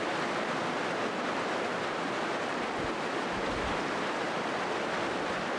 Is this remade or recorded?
recorded